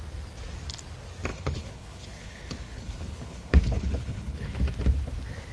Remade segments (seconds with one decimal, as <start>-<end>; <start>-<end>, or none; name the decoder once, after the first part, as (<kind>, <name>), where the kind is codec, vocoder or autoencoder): 1.3-4.6 (codec, HILCodec)